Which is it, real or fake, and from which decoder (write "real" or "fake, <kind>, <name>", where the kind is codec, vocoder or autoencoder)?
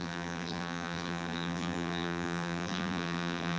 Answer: fake, vocoder, BigVGAN v2